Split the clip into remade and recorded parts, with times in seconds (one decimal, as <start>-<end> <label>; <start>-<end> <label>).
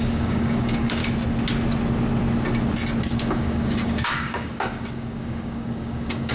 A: 0.0-1.0 remade; 1.0-3.0 recorded; 3.0-6.3 remade